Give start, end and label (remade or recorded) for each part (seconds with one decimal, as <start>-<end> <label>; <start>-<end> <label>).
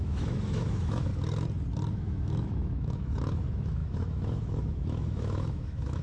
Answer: 0.0-1.1 remade; 1.1-1.9 recorded; 1.9-6.0 remade